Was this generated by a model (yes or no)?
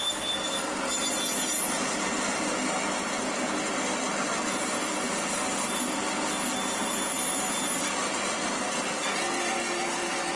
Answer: no